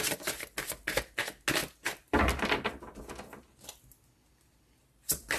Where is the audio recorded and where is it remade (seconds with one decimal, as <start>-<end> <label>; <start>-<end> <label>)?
0.0-1.6 recorded; 1.6-3.1 remade; 3.1-5.4 recorded

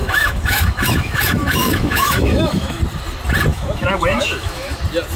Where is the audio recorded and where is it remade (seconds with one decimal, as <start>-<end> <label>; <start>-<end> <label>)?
0.0-2.8 remade; 2.8-3.5 recorded; 3.5-4.8 remade; 4.8-5.2 recorded

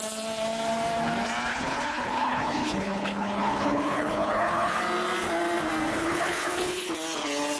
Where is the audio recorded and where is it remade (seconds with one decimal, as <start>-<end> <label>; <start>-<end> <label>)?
0.0-1.5 recorded; 1.5-4.8 remade; 4.8-5.9 recorded; 5.9-6.9 remade; 6.9-7.6 recorded

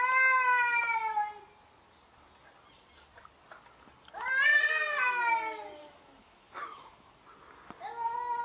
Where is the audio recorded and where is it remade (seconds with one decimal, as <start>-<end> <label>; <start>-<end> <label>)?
0.0-5.8 recorded; 5.8-7.2 remade; 7.2-8.4 recorded